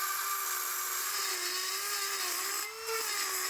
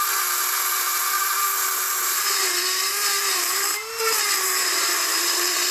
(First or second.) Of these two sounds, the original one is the first